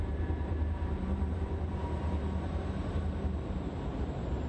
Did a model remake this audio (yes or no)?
yes